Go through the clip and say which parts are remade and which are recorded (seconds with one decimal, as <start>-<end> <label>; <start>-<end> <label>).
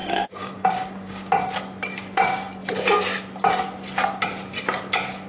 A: 0.0-1.3 remade; 1.3-5.3 recorded